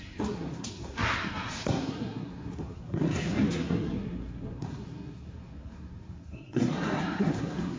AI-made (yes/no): yes